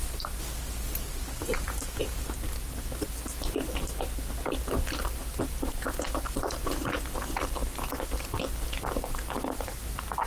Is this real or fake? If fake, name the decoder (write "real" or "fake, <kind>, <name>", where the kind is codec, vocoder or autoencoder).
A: real